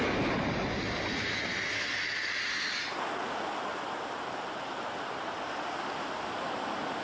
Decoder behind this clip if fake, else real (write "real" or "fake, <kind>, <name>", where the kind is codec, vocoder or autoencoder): real